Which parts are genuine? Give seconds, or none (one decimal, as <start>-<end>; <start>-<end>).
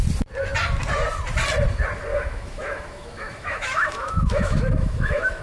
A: 0.0-2.1